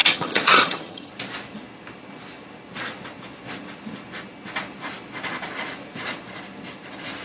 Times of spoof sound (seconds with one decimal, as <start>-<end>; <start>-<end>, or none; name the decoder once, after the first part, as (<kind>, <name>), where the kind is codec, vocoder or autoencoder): 0.0-1.1 (vocoder, HiFi-GAN)